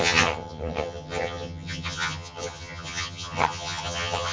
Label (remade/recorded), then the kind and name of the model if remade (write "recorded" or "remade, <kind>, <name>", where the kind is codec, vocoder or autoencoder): remade, vocoder, HiFi-GAN